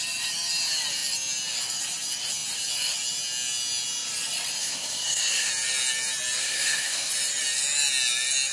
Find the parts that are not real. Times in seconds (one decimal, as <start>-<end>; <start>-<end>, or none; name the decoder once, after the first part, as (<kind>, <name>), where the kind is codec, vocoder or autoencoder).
4.6-5.5 (codec, SNAC); 6.4-7.1